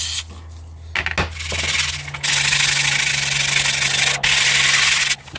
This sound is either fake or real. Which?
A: real